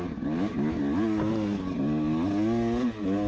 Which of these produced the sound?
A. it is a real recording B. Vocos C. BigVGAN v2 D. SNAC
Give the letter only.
A